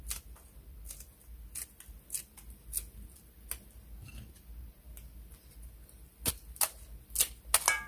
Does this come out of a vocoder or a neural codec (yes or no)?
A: no